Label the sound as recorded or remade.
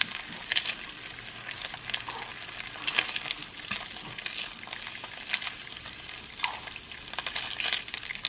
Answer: recorded